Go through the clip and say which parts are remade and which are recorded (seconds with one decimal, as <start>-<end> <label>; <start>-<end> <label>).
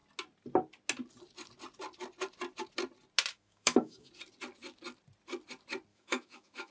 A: 0.0-3.3 recorded; 3.3-4.1 remade; 4.1-5.9 recorded; 5.9-6.7 remade